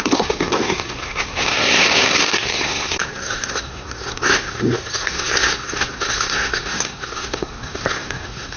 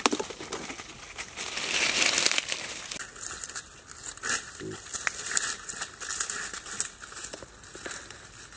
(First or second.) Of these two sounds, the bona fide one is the second